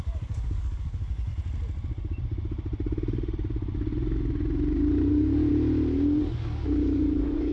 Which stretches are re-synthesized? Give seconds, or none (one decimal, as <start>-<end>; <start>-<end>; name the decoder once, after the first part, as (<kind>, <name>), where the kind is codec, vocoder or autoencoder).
0.0-1.3 (codec, DAC); 5.1-5.5; 6.2-7.5